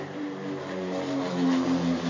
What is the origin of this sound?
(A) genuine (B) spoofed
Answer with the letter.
B